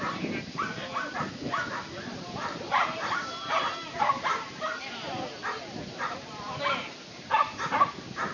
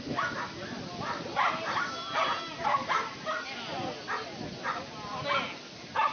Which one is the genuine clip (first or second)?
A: second